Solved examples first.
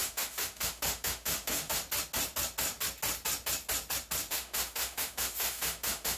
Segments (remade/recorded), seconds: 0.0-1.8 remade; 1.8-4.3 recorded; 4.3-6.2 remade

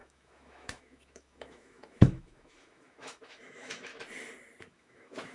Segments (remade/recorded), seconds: 0.0-3.9 remade; 3.9-4.6 recorded; 4.6-5.3 remade

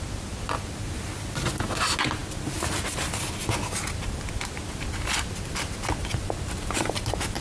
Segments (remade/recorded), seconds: 0.0-7.4 recorded

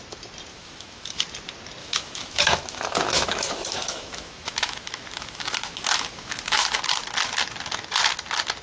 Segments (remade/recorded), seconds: 0.0-0.5 recorded; 0.5-1.2 remade; 1.2-1.8 recorded; 1.8-6.8 remade; 6.8-8.6 recorded

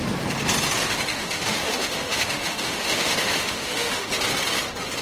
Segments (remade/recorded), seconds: 0.0-1.1 recorded; 1.1-4.1 remade; 4.1-5.0 recorded

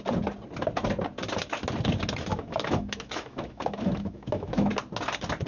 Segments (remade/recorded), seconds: 0.0-2.3 recorded; 2.3-4.7 remade; 4.7-5.5 recorded

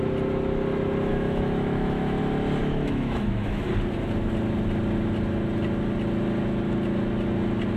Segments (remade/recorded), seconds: 0.0-1.1 recorded; 1.1-2.2 remade; 2.2-2.6 recorded; 2.6-3.7 remade; 3.7-7.8 recorded